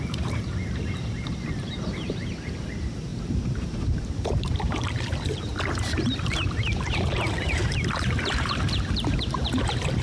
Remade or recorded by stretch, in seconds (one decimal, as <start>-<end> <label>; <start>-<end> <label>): 0.0-5.5 remade; 5.5-6.2 recorded; 6.2-10.0 remade